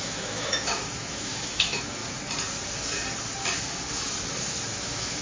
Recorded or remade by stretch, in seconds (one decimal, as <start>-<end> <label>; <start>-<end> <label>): 0.0-2.0 remade; 2.0-4.8 recorded; 4.8-5.2 remade